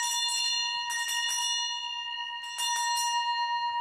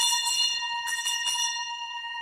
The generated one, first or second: second